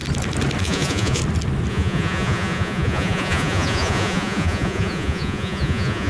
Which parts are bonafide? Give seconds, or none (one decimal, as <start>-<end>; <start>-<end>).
0.0-0.6; 1.2-1.7